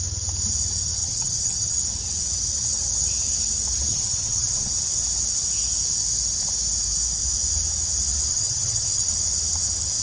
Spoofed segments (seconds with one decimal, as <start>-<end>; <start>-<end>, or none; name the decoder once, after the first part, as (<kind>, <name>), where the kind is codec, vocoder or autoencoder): 1.0-1.8 (vocoder, HiFi-GAN); 3.9-4.7; 8.3-9.1